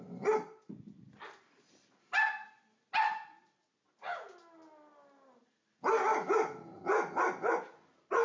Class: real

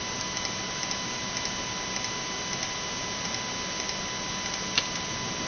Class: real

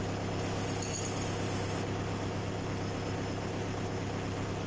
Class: real